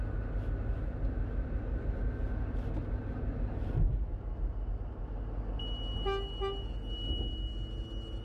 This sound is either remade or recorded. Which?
recorded